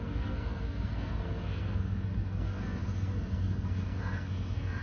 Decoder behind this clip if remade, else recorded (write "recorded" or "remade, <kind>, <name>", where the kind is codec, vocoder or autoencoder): remade, codec, SNAC